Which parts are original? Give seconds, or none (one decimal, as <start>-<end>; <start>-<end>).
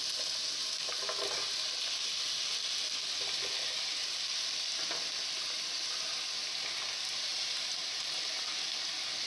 0.0-9.3